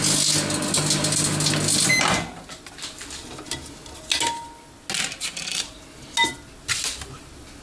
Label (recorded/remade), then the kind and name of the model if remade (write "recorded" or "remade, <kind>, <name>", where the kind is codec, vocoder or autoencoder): recorded